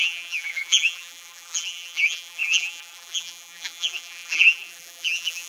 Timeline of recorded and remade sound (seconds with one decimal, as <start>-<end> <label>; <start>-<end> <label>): 0.0-5.5 remade